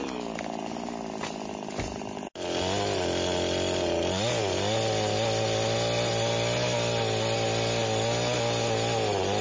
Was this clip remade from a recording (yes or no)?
no